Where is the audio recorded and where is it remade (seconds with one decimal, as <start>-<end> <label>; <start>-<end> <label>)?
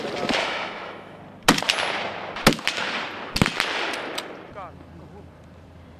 0.0-0.4 recorded; 0.4-1.2 remade; 1.2-6.0 recorded